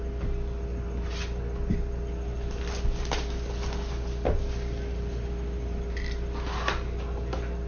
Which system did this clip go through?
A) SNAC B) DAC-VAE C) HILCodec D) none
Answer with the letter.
D